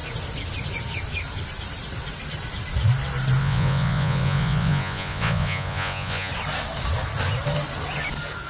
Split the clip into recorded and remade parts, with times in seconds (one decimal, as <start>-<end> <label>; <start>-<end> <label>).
0.0-3.4 recorded; 3.4-6.3 remade; 6.3-8.5 recorded